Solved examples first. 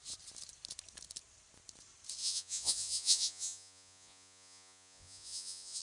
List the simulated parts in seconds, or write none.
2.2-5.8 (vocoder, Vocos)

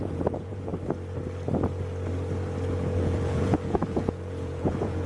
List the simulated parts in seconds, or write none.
0.0-0.7 (vocoder, Vocos); 3.0-5.1

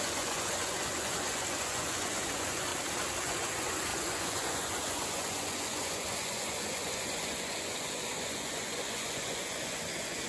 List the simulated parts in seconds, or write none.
0.0-2.7 (vocoder, Vocos); 3.2-10.3

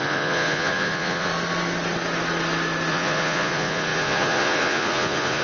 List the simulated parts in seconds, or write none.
0.0-1.3 (vocoder, Vocos); 2.9-5.4

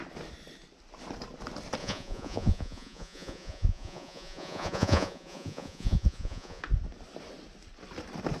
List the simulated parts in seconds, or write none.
1.8-6.6 (vocoder, Vocos)

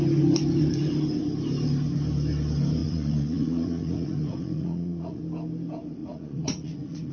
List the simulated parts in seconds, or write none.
2.8-5.2 (vocoder, Vocos); 6.0-7.1

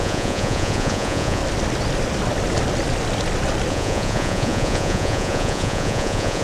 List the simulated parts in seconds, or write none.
0.0-1.4 (vocoder, Vocos); 3.7-6.4